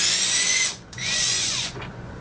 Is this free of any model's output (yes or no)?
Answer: no